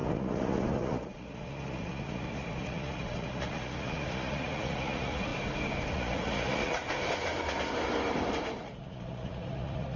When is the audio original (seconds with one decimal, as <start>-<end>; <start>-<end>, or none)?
5.3-5.9; 6.8-8.6